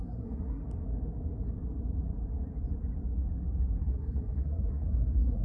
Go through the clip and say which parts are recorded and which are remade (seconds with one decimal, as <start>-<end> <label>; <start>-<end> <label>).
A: 0.0-0.6 remade; 0.6-3.8 recorded; 3.8-5.4 remade